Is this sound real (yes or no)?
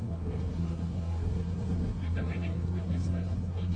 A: no